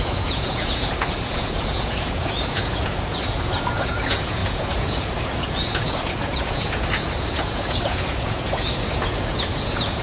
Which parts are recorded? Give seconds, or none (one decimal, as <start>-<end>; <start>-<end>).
none